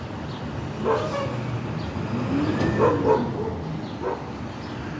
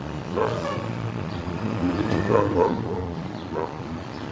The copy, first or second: second